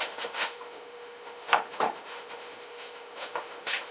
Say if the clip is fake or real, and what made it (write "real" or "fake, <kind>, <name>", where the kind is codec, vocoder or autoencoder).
fake, autoencoder, DAC-VAE